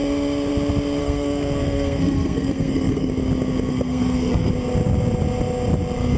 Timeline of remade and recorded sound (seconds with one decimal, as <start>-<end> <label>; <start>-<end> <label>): 0.0-1.0 recorded; 1.0-3.1 remade; 3.1-3.7 recorded; 3.7-4.5 remade; 4.5-6.2 recorded